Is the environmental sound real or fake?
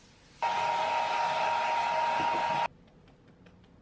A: real